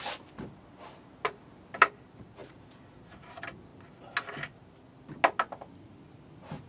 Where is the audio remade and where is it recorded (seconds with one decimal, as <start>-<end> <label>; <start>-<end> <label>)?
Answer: 0.0-2.4 recorded; 2.4-3.3 remade; 3.3-6.7 recorded